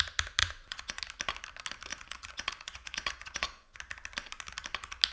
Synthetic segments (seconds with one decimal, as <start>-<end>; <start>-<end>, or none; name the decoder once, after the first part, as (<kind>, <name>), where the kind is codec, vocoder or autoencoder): 0.4-1.0 (vocoder, Vocos); 1.9-3.8